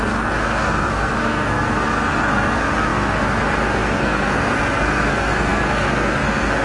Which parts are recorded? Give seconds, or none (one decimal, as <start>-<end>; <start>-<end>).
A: none